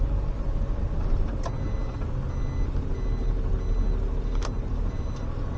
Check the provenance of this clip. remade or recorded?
recorded